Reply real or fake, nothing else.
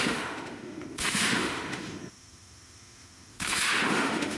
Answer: fake